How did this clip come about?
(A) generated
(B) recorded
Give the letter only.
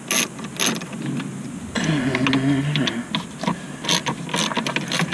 B